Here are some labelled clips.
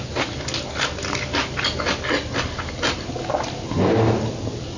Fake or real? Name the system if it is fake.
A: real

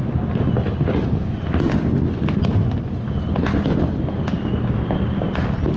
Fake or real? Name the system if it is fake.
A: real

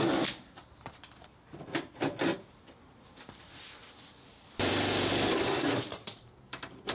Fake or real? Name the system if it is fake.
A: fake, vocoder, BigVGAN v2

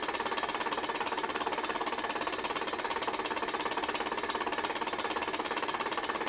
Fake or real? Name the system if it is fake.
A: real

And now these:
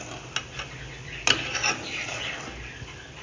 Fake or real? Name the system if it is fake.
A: real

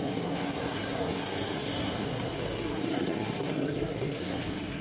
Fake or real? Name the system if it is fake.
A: fake, codec, SNAC